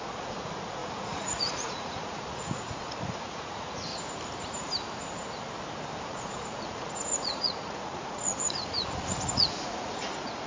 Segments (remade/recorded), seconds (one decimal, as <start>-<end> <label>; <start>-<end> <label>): 0.0-3.9 remade; 3.9-6.0 recorded; 6.0-10.5 remade